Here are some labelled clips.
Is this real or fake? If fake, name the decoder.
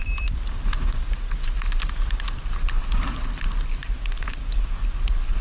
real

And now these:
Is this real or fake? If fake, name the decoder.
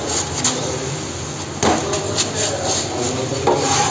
real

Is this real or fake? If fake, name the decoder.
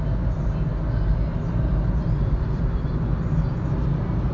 real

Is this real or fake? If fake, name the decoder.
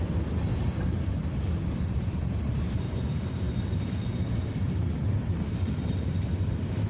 real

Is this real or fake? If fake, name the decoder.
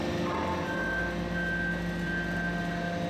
real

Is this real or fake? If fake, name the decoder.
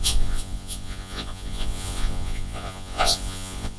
fake, vocoder, Vocos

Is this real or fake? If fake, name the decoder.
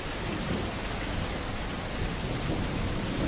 real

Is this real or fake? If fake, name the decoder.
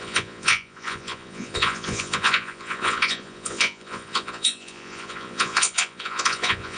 fake, vocoder, Vocos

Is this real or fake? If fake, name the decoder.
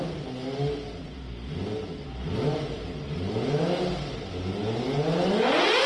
real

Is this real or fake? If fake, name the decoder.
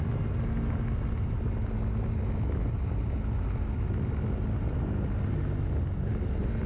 real